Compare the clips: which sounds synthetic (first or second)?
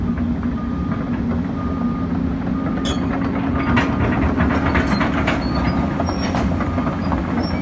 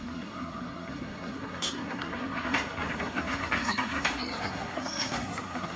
second